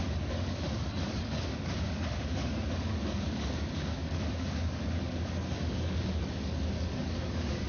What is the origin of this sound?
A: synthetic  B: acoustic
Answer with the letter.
A